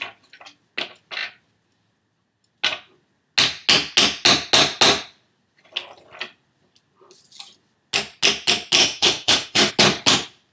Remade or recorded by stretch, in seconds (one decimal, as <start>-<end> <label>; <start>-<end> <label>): 0.0-8.8 recorded; 8.8-9.7 remade; 9.7-10.5 recorded